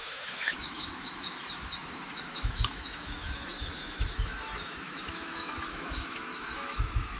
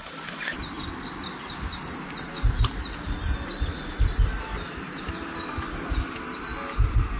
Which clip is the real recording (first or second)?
second